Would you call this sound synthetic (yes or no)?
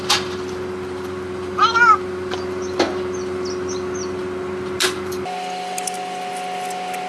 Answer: no